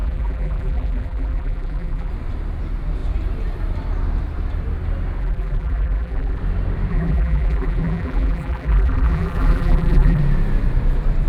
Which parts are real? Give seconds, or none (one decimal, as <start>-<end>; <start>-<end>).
2.1-5.2; 6.4-6.9; 10.2-11.3